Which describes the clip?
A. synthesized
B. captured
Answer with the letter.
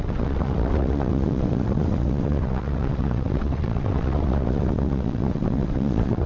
A